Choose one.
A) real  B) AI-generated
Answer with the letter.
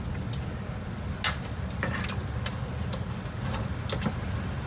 A